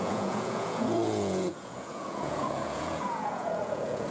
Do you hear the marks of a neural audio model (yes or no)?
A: yes